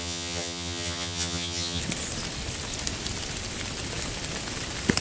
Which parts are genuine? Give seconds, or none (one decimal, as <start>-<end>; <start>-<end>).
1.8-5.0